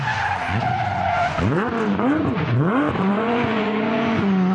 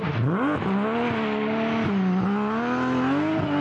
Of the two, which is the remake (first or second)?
first